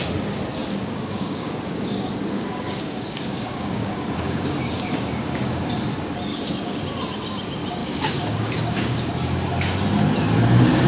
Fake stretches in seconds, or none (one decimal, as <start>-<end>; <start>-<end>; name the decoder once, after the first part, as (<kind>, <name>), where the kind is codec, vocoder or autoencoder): 0.6-5.6 (codec, DAC); 6.3-6.8; 7.8-9.1